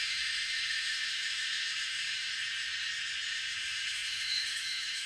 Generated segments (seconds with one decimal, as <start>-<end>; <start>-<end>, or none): 0.0-2.3; 3.3-5.1